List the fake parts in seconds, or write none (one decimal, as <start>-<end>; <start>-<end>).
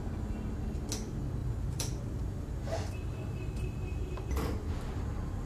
1.4-4.7